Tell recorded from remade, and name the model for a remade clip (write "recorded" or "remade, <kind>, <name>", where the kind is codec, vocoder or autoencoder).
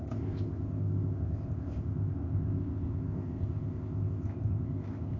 remade, codec, ZipCodec